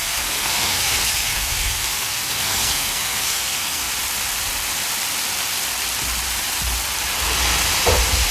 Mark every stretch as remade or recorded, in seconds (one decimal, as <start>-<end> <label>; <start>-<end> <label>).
0.0-3.9 remade; 3.9-8.3 recorded